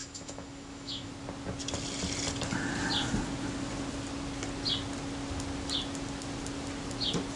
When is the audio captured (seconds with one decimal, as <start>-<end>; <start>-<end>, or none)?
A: 1.1-7.4